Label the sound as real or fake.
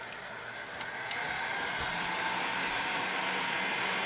real